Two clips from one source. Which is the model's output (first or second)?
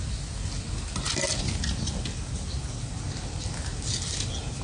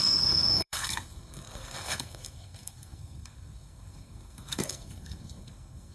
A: second